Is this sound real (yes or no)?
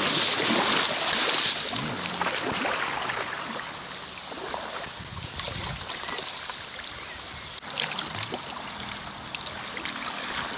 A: yes